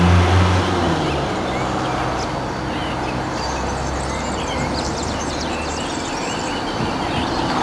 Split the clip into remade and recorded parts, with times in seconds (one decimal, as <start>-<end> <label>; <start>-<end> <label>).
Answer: 0.0-2.8 recorded; 2.8-6.4 remade; 6.4-7.6 recorded